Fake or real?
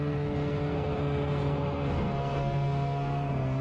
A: fake